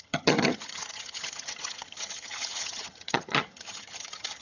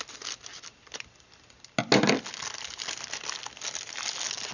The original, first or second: second